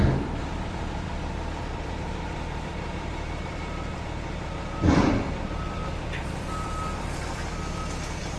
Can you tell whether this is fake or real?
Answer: fake